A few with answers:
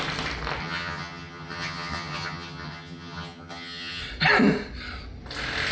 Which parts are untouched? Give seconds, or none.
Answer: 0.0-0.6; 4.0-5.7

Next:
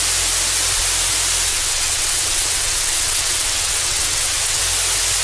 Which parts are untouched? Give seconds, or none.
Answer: 0.0-1.5; 4.6-5.2

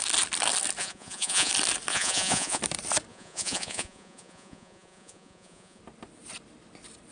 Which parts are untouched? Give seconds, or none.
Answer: 0.0-0.8; 1.5-1.9; 2.6-3.1; 5.8-7.1

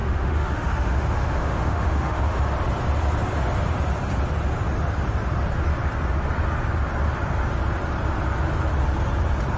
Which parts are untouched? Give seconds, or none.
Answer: 2.4-9.6

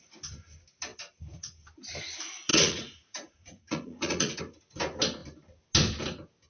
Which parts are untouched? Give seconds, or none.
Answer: 0.0-2.5; 4.4-6.5

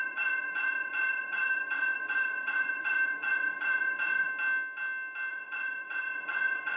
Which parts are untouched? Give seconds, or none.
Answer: 4.3-5.3

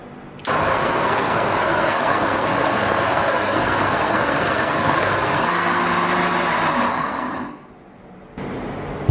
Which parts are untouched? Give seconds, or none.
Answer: 0.0-0.7; 5.8-6.9; 7.7-9.1

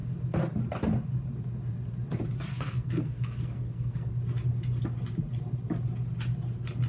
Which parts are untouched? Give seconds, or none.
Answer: 0.0-2.5; 4.1-6.9